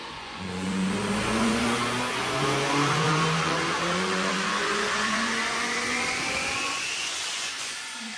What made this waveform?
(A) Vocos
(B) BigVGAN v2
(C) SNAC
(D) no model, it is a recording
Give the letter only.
A